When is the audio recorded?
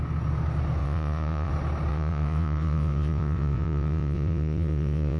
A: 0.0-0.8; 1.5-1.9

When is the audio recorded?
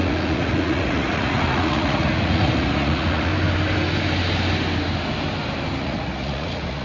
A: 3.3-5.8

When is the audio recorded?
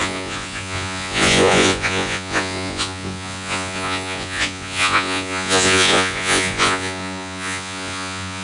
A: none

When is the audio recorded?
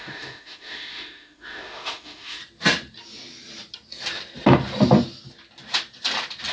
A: 2.4-6.5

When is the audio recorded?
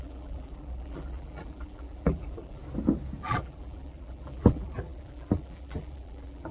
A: 2.6-3.2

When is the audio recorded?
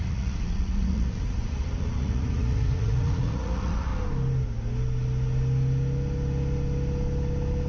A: 3.9-7.7